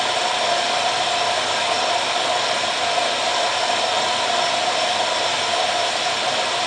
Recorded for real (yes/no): yes